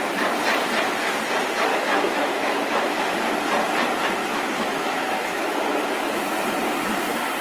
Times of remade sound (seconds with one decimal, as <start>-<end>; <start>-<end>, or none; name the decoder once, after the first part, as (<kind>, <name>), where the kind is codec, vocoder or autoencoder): 1.7-3.2 (autoencoder, DAC-VAE); 4.2-6.2